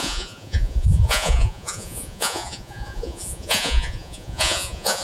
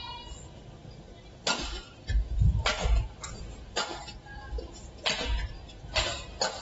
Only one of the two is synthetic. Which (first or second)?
first